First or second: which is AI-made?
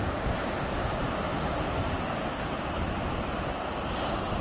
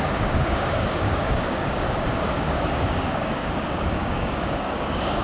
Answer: second